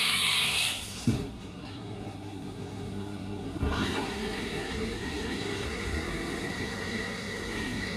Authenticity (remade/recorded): remade